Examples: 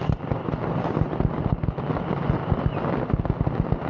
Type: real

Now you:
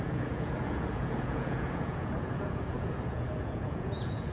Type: fake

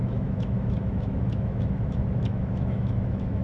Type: fake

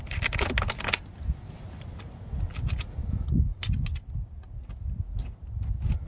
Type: real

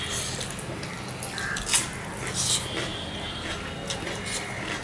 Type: real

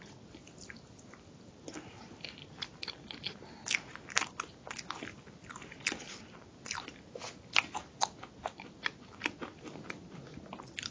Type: real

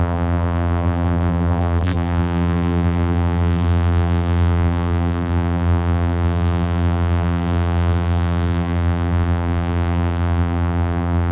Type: fake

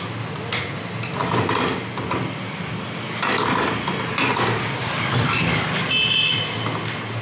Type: real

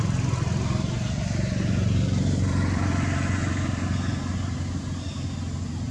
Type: real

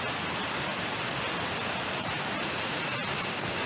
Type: real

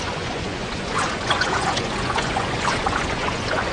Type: fake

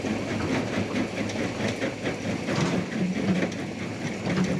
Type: real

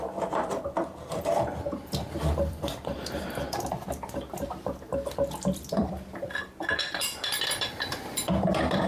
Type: fake